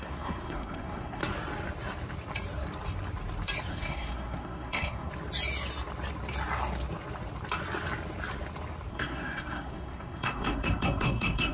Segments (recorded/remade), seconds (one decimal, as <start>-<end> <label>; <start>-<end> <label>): 0.0-1.2 remade; 1.2-3.7 recorded; 3.7-5.1 remade; 5.1-8.9 recorded; 8.9-11.5 remade